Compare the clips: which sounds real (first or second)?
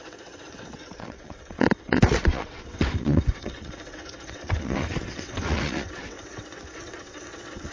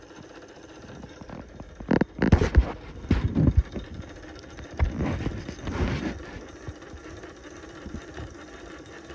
second